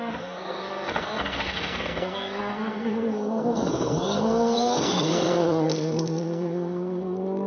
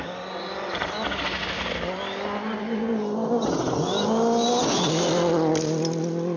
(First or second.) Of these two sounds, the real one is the second